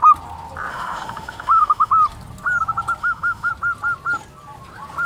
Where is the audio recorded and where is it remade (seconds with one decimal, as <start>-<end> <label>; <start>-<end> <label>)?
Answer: 0.0-0.7 recorded; 0.7-1.9 remade; 1.9-3.0 recorded; 3.0-3.5 remade; 3.5-5.1 recorded